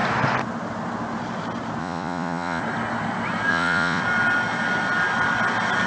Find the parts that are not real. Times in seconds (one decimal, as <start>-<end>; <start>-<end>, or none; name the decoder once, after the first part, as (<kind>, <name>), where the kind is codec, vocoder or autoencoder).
1.8-2.6 (vocoder, Vocos); 3.5-4.0